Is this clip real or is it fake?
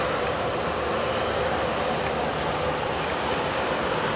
real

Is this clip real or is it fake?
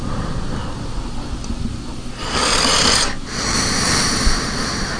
real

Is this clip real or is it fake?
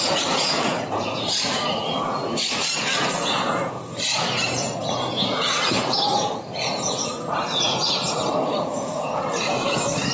fake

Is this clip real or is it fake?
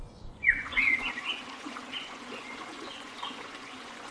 fake